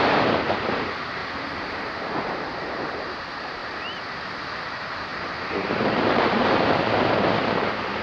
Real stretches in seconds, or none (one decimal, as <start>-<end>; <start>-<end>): 1.2-2.0; 3.6-4.6